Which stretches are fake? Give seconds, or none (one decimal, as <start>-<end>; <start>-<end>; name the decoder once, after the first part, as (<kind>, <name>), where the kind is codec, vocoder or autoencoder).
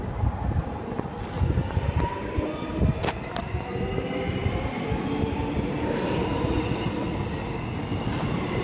none